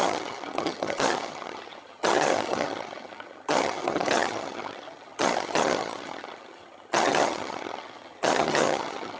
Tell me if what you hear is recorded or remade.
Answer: remade